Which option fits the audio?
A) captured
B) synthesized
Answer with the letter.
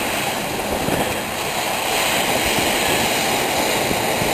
A